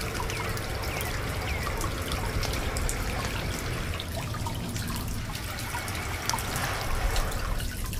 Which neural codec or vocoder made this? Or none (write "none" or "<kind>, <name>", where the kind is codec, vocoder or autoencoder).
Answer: none